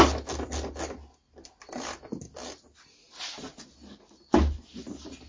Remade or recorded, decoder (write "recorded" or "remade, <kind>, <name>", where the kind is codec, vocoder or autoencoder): recorded